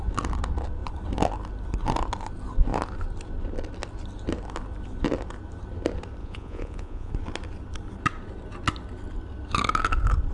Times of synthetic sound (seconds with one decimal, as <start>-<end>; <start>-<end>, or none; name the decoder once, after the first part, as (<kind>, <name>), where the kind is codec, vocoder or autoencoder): 6.2-7.1 (vocoder, Vocos)